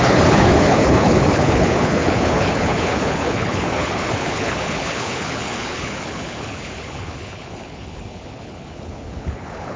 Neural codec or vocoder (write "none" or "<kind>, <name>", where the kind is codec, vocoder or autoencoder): codec, HILCodec